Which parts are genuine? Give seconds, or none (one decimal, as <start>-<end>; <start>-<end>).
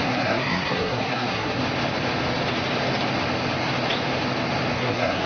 1.6-4.8